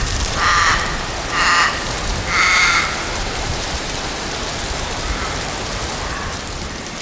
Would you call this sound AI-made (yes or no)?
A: yes